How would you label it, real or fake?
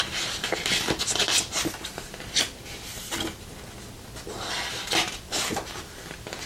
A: real